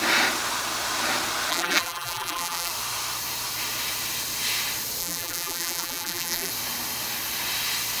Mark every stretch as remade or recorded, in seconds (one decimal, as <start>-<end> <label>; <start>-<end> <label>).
0.0-1.5 recorded; 1.5-2.7 remade; 2.7-5.0 recorded; 5.0-6.5 remade; 6.5-8.0 recorded